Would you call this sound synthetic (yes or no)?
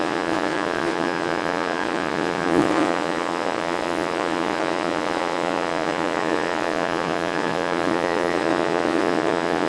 yes